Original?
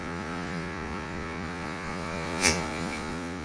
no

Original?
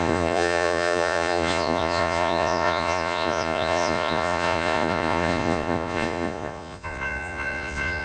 no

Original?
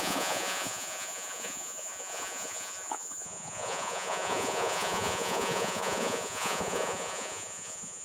no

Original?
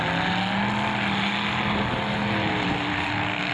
yes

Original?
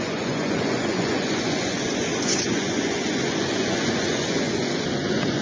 no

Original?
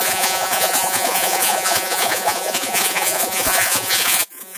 no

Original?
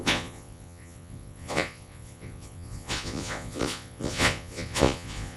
no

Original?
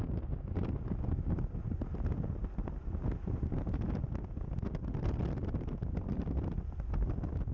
yes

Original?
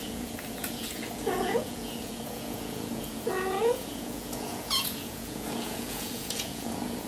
no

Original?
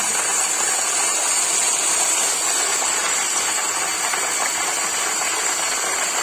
yes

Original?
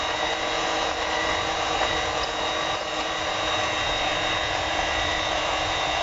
no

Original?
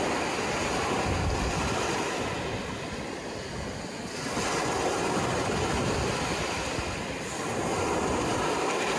yes